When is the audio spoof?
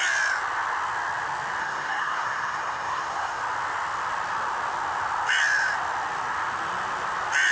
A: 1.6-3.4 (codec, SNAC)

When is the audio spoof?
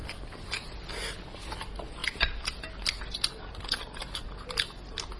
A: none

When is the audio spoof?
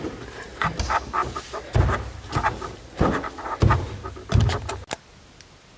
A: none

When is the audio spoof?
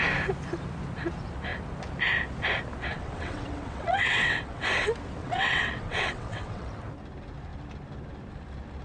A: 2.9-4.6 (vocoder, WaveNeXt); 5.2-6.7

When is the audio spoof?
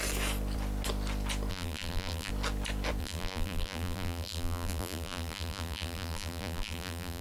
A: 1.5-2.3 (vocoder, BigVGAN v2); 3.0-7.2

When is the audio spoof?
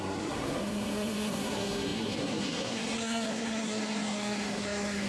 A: 0.0-5.1 (codec, SNAC)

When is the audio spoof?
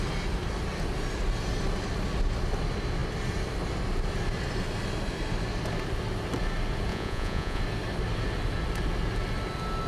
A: 6.9-7.6 (vocoder, Vocos)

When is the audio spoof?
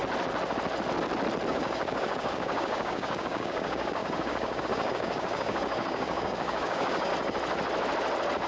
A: 1.5-7.1 (codec, DAC)